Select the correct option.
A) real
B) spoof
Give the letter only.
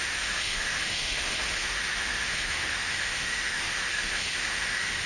B